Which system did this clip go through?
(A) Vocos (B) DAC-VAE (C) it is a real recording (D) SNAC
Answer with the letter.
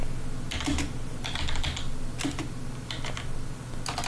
C